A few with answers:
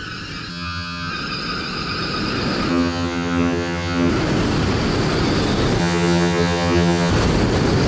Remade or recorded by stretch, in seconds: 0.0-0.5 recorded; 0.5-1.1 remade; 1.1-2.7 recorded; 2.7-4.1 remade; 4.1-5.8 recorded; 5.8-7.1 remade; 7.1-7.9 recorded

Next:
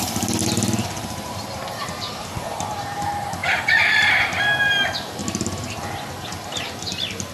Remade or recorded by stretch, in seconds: 0.0-0.4 recorded; 0.4-3.0 remade; 3.0-3.4 recorded; 3.4-4.1 remade; 4.1-5.2 recorded; 5.2-5.8 remade; 5.8-7.3 recorded